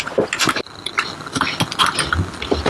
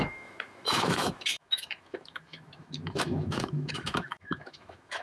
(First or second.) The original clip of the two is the first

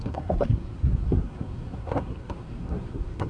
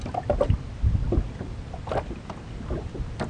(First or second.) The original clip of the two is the second